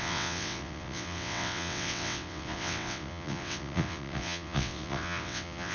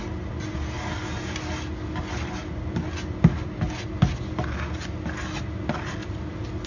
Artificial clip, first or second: first